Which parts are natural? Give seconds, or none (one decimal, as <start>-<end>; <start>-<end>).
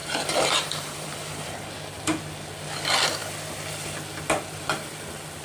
1.7-5.4